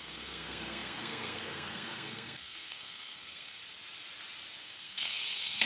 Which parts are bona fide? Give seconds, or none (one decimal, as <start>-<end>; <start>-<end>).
3.6-4.6